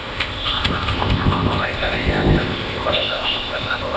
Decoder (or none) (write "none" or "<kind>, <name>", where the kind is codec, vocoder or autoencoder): codec, ZipCodec